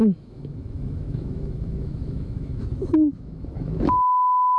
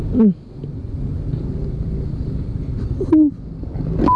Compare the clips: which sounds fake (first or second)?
first